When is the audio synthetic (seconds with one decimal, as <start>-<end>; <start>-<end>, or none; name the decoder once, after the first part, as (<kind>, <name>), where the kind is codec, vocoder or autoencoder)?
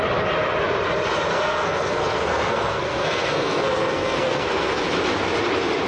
1.3-4.8 (codec, SNAC)